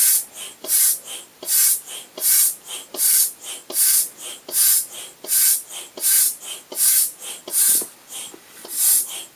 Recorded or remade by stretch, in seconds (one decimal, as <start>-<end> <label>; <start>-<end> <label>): 0.0-9.4 recorded